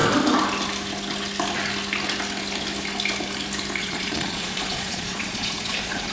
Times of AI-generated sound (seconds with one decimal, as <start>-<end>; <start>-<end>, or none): 3.8-6.1